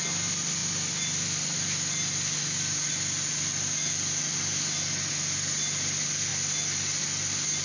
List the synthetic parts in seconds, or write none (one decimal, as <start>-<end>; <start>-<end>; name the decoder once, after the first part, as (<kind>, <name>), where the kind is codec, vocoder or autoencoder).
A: none